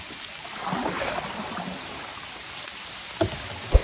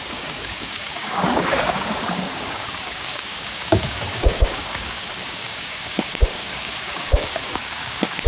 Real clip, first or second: first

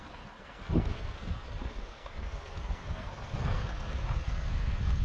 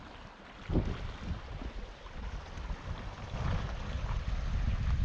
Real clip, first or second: second